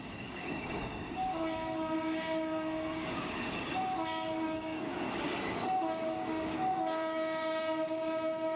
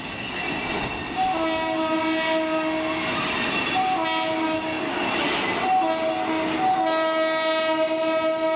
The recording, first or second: second